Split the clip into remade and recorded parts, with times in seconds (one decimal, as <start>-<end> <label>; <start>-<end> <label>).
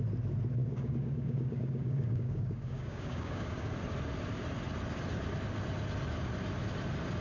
0.0-0.6 recorded; 0.6-3.7 remade; 3.7-7.2 recorded